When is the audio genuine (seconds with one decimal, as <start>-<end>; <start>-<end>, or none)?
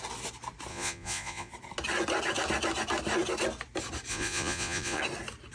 0.0-0.7; 1.5-4.1; 5.0-5.5